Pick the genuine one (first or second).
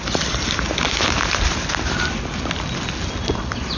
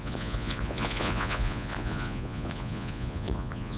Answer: first